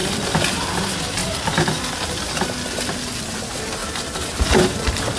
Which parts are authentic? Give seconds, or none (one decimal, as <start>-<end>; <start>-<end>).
0.0-3.8